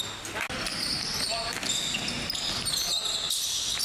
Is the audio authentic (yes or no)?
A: yes